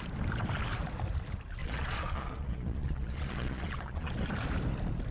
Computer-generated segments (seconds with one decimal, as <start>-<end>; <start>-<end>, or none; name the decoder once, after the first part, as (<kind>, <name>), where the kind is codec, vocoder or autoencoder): 1.6-4.1 (vocoder, Vocos)